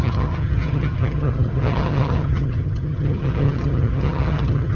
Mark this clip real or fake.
fake